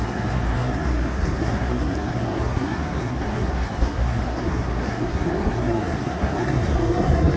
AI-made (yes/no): yes